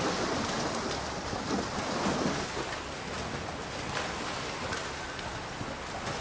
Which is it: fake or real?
real